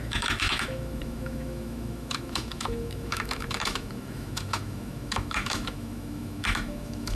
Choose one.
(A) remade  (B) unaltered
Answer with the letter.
A